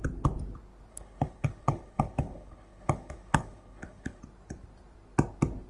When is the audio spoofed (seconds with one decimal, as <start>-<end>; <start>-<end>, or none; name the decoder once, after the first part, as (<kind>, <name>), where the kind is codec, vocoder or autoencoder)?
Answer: 0.9-4.2 (codec, HILCodec)